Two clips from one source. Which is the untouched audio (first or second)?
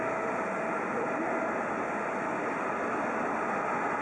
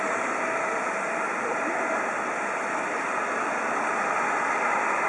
first